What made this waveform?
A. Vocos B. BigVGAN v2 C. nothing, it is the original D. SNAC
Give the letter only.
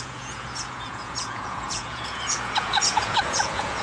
A